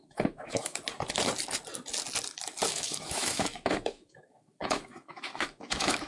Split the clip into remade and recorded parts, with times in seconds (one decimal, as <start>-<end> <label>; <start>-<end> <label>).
0.0-0.8 remade; 0.8-2.7 recorded; 2.7-6.1 remade